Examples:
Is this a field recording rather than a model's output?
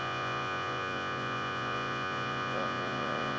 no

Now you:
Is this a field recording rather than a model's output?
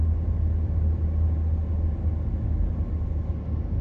yes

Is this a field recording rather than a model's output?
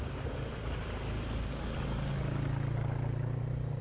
yes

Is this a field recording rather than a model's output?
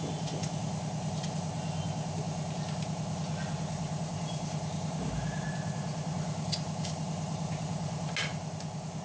yes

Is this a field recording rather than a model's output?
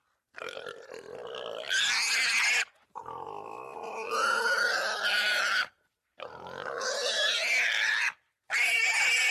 yes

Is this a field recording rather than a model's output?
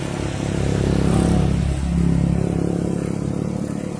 yes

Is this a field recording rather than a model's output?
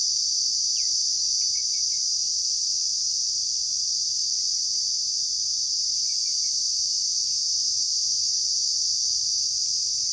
yes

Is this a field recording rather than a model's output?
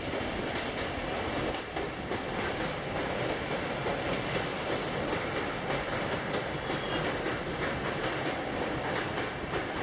no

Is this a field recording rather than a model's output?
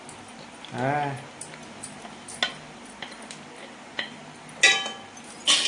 yes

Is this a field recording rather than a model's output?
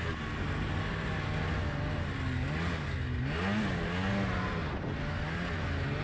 yes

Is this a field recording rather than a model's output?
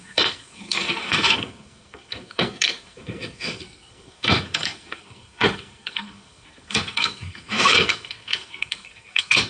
no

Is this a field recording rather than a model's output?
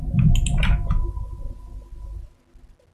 yes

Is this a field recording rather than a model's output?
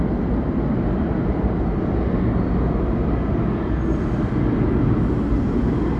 yes